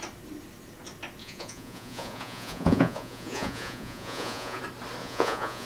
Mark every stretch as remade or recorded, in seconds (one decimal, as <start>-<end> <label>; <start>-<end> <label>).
0.0-1.2 recorded; 1.2-4.6 remade; 4.6-5.0 recorded; 5.0-5.7 remade